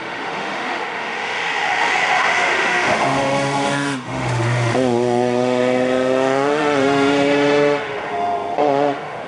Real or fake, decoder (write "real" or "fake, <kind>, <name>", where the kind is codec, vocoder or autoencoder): fake, autoencoder, DAC-VAE